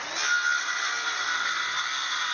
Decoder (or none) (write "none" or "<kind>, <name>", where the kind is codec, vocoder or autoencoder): none